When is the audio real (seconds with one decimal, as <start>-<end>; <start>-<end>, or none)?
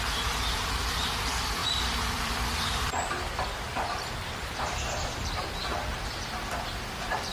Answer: none